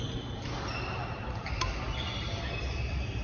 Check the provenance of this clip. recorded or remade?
recorded